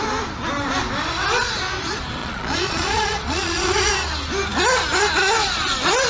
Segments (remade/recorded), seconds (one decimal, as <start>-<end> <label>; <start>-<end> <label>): 0.0-2.2 recorded; 2.2-3.9 remade; 3.9-6.1 recorded